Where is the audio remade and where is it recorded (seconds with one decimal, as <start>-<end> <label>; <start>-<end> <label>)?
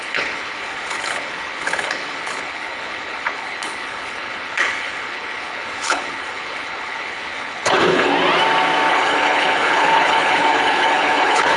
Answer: 0.0-8.1 remade; 8.1-8.9 recorded; 8.9-11.6 remade